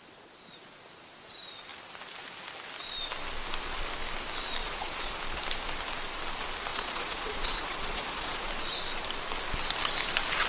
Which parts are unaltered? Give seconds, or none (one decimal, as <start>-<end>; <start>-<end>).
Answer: 0.0-4.6; 5.1-6.7; 8.5-10.5